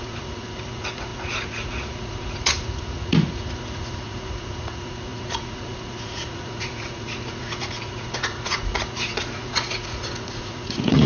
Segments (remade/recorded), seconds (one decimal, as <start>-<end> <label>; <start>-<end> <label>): 0.0-11.1 remade